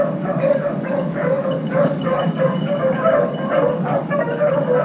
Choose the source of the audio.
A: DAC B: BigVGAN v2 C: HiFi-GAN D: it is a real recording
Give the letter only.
A